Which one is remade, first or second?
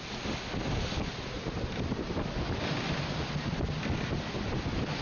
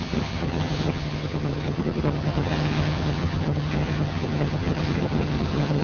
second